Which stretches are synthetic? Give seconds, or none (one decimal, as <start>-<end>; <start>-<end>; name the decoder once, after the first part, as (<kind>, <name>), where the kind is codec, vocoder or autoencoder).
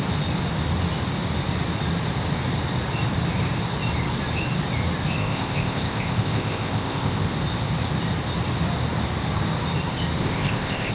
5.2-7.3 (codec, ZipCodec); 10.2-10.9